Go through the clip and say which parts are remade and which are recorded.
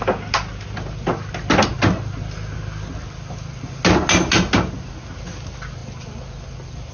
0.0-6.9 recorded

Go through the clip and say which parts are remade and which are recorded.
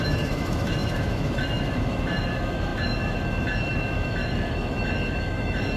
0.0-5.8 remade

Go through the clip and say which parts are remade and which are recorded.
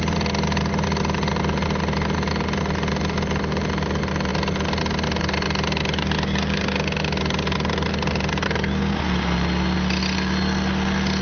0.0-11.2 recorded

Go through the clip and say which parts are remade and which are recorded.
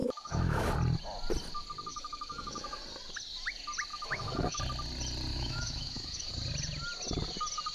0.0-0.7 remade; 0.7-1.9 recorded; 1.9-2.8 remade; 2.8-3.9 recorded; 3.9-4.6 remade; 4.6-5.3 recorded; 5.3-6.3 remade; 6.3-7.7 recorded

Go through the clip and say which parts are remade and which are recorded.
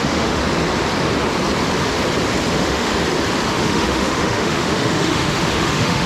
0.0-0.4 remade; 0.4-2.5 recorded; 2.5-2.9 remade; 2.9-3.5 recorded; 3.5-6.1 remade